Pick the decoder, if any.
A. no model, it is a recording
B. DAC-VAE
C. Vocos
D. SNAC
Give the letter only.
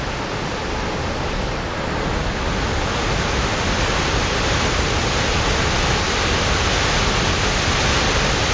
A